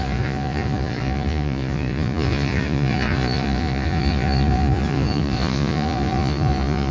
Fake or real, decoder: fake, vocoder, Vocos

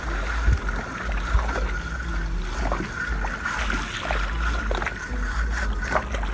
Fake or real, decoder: real